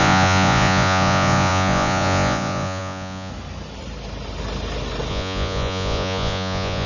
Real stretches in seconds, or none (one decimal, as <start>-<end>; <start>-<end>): 3.3-5.1

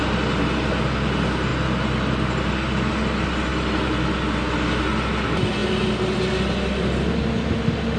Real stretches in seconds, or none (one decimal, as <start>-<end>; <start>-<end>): 0.0-8.0

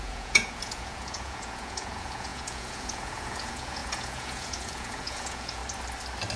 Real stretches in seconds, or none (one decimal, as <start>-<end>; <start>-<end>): 5.6-6.4